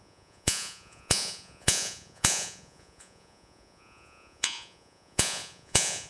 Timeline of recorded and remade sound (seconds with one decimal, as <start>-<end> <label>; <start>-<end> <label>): 0.0-6.1 remade